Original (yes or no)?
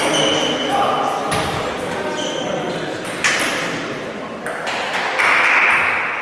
yes